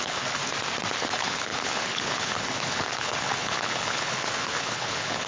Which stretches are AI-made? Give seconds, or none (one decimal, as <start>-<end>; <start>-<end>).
0.0-0.4; 1.0-5.3